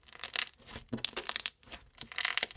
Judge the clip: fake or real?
real